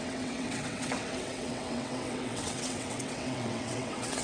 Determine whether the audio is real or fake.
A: fake